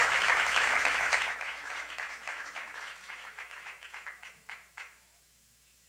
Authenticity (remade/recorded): remade